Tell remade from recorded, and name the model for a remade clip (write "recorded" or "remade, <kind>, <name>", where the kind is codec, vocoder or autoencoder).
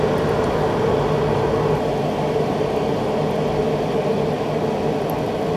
recorded